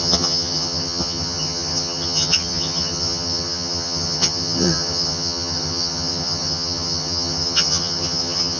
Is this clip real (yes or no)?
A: no